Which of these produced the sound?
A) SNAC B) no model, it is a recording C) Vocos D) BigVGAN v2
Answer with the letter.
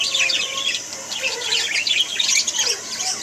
B